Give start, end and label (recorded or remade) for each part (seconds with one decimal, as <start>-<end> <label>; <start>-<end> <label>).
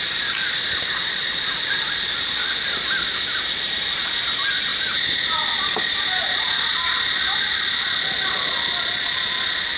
0.0-4.7 recorded; 4.7-5.2 remade; 5.2-9.8 recorded